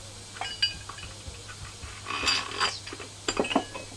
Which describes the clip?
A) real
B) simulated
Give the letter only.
A